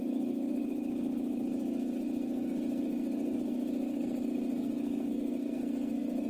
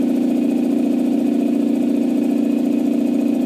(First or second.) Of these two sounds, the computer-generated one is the first